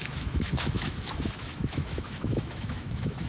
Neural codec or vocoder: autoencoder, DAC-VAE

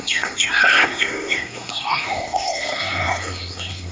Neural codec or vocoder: codec, SNAC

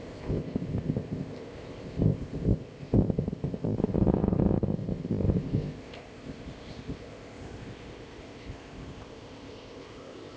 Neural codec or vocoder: codec, ZipCodec